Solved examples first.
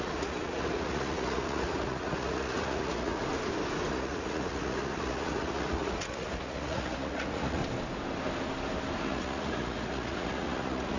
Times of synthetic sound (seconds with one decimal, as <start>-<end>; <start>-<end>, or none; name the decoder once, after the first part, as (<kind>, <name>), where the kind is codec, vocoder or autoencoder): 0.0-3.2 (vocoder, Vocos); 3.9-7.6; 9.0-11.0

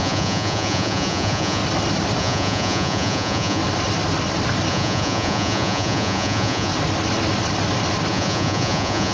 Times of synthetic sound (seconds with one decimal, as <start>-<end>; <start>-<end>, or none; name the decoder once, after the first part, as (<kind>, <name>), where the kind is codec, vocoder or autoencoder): 0.0-1.6 (vocoder, Vocos); 2.2-3.6; 4.7-6.7; 8.1-9.1

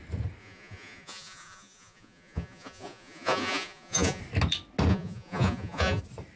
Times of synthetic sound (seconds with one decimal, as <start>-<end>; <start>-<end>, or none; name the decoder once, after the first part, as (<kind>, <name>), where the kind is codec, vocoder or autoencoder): 0.4-4.2 (vocoder, Vocos); 4.9-6.0